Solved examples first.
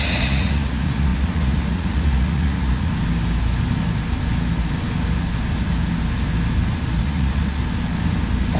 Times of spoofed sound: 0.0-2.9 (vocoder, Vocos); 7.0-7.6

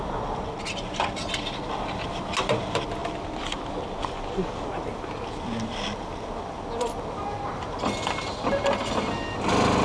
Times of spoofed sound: none

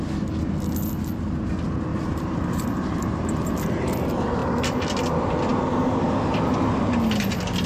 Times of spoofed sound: 1.9-3.2 (vocoder, BigVGAN v2)

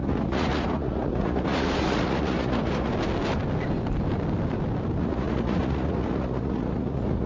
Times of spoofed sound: 0.0-2.9 (vocoder, Vocos); 5.0-7.3

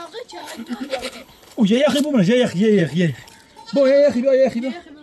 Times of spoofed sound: 0.4-1.9 (codec, HILCodec); 2.8-3.3

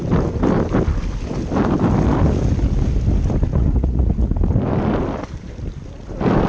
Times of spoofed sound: 3.5-4.3 (vocoder, Vocos)

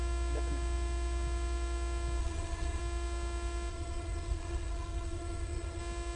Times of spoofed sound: 2.2-2.8 (codec, SNAC); 3.7-5.8

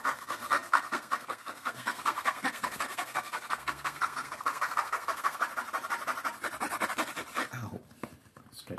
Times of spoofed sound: 0.0-5.4 (codec, SNAC)